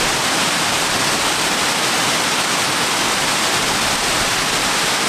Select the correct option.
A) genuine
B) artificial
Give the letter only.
A